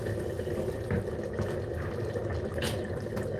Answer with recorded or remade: recorded